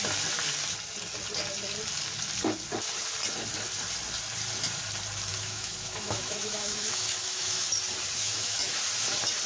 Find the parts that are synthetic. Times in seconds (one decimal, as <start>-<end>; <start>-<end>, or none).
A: 5.3-7.7; 8.2-8.8